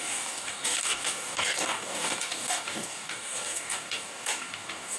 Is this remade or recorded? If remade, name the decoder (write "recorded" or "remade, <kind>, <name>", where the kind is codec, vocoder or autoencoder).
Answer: remade, codec, DAC